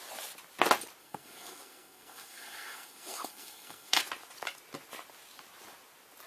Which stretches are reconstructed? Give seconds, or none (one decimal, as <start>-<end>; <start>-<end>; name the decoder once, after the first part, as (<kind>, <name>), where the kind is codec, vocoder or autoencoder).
1.0-4.0 (codec, SNAC)